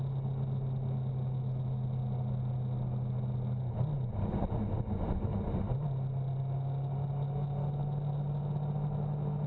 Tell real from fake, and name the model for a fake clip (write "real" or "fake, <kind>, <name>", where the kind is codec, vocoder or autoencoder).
real